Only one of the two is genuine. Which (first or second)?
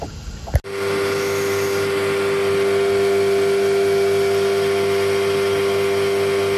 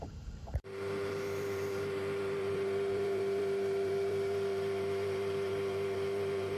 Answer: first